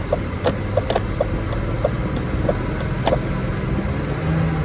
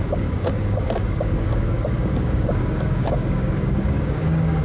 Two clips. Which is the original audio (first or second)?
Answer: first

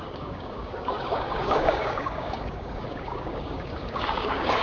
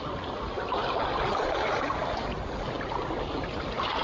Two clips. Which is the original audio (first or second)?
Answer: second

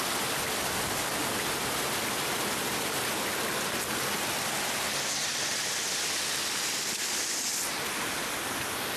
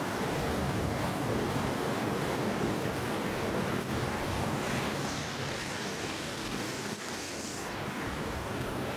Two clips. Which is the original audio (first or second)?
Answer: first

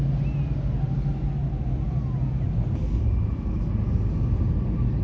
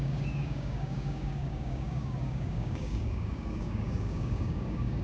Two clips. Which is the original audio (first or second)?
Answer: first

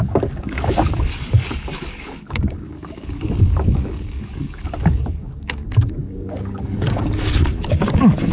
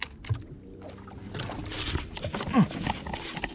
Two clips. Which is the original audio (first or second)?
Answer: second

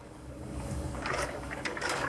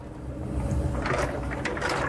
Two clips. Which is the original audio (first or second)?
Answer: second